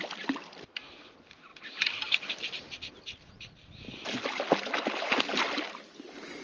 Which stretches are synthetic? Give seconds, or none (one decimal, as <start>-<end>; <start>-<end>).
none